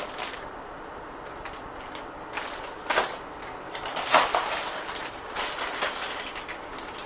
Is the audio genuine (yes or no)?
no